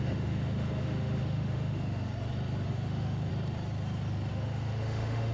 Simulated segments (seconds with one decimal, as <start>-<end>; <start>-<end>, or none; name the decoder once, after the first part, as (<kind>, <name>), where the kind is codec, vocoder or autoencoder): 0.0-2.1 (autoencoder, DAC-VAE); 2.7-3.3; 4.3-5.3